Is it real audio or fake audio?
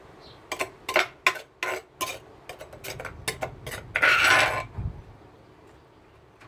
real